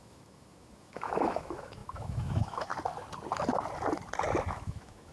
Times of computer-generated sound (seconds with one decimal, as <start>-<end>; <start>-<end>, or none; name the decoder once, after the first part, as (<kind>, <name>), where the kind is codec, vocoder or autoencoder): 0.0-2.7 (autoencoder, DAC-VAE); 4.5-5.1